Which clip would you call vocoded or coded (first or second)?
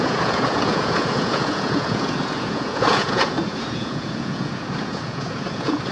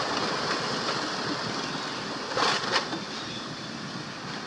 first